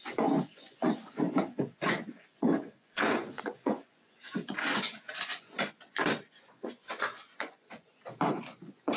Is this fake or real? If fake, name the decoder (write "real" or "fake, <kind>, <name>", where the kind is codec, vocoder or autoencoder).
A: fake, vocoder, Vocos